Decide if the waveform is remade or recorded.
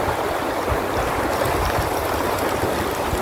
recorded